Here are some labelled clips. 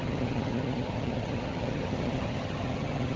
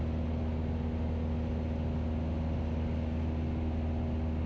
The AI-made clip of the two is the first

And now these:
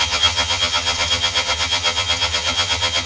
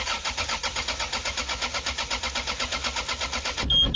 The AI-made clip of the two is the first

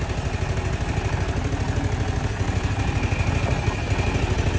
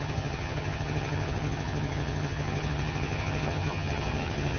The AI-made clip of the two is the second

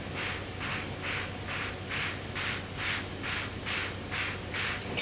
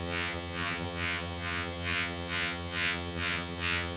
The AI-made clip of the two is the second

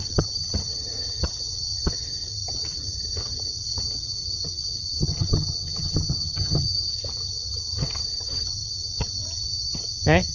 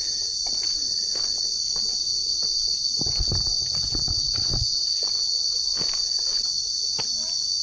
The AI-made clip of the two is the first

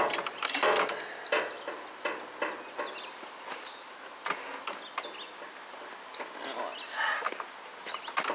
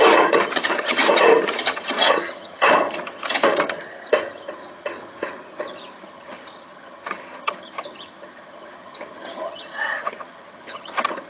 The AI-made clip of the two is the second